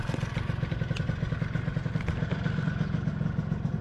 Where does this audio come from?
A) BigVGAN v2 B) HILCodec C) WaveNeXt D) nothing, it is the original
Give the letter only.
D